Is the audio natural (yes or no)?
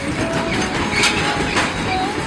yes